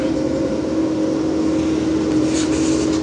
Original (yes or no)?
yes